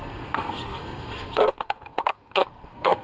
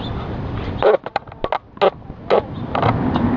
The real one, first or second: second